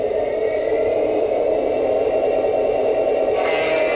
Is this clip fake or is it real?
fake